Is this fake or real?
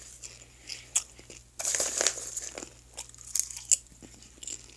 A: real